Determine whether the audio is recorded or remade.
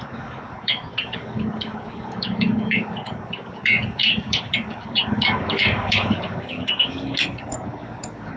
remade